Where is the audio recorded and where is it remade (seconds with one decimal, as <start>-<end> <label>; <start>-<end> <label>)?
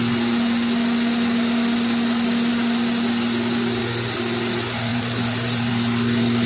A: 0.0-4.9 recorded; 4.9-5.7 remade; 5.7-6.5 recorded